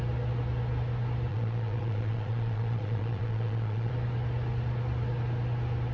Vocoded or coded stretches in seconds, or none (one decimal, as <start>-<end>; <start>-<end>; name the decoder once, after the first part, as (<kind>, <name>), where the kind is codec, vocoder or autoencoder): 1.3-3.9 (vocoder, Vocos)